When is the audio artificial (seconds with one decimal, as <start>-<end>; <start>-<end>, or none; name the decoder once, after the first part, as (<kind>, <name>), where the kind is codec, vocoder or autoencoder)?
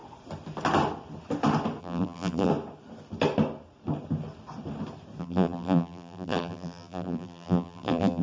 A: 1.8-2.5 (vocoder, BigVGAN v2); 5.2-8.2